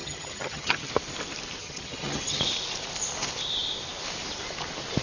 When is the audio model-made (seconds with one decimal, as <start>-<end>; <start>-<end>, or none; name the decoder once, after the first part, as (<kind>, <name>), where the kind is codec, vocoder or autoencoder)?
0.0-0.9 (vocoder, HiFi-GAN); 1.6-2.4